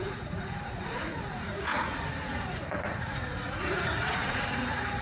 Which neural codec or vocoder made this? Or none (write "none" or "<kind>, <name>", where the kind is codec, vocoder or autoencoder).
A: vocoder, Vocos